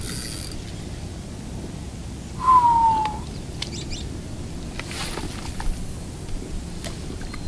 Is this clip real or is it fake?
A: real